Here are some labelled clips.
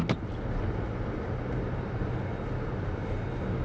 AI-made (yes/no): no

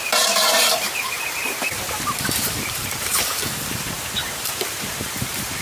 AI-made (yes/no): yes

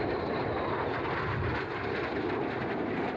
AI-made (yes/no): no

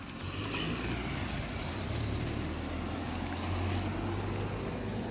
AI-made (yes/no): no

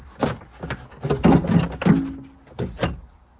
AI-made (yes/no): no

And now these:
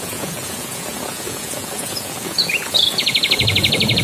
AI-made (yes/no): yes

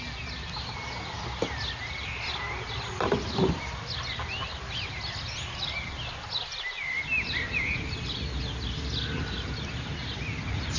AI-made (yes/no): no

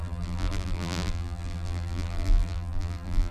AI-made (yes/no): yes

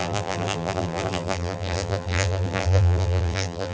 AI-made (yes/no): yes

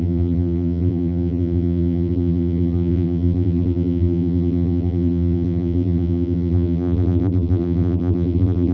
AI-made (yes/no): yes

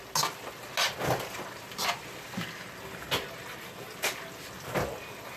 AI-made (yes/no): no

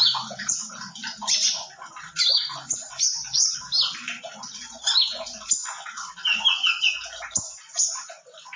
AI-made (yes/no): no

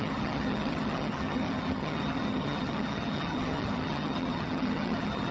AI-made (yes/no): yes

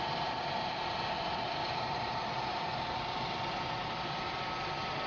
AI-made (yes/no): no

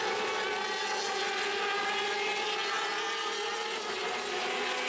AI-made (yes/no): no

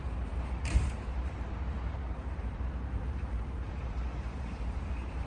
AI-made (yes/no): yes